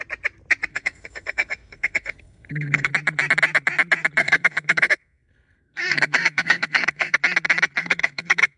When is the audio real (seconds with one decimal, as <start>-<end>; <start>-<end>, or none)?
0.0-0.7; 2.9-4.2; 7.2-7.8

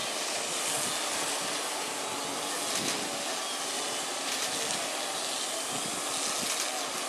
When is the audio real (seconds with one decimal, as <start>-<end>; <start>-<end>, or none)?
0.0-7.1

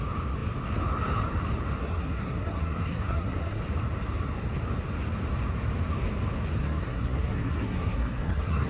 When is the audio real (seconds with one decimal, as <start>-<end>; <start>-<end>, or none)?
0.0-1.8; 3.6-6.6

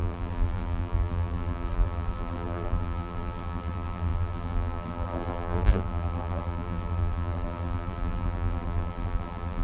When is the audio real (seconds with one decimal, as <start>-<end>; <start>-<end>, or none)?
none